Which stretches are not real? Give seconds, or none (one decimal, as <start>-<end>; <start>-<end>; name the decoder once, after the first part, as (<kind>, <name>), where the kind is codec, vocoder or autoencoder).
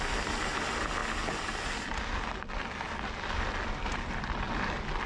none